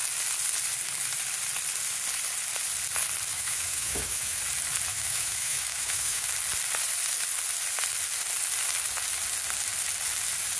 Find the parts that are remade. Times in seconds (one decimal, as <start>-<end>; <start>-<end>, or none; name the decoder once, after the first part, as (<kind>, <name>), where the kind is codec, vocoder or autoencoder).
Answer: 3.3-4.4 (autoencoder, DAC-VAE); 4.9-6.2

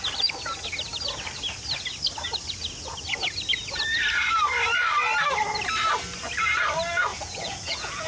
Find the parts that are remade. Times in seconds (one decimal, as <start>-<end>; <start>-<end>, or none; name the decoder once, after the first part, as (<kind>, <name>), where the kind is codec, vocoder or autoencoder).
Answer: 7.1-8.1 (vocoder, Vocos)

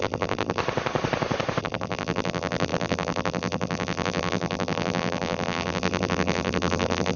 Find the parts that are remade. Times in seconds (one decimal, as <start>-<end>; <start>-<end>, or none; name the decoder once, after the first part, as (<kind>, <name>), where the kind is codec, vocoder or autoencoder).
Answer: 0.0-0.6 (vocoder, BigVGAN v2); 1.6-7.2